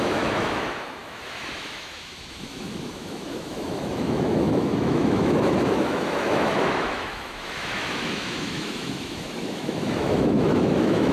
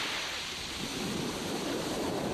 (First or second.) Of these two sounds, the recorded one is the second